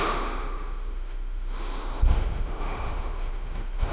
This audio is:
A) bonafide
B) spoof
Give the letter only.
B